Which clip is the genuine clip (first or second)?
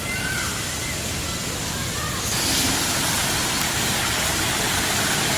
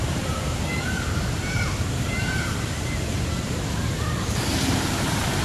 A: first